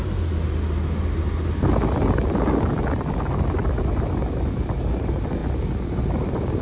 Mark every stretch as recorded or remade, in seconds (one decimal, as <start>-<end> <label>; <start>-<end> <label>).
0.0-6.6 recorded